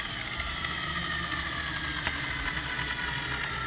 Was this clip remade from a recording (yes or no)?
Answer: no